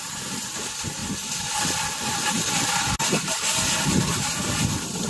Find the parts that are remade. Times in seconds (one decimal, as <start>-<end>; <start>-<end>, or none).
none